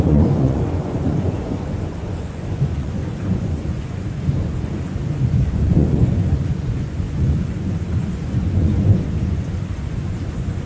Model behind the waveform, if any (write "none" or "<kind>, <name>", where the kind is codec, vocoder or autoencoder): vocoder, Vocos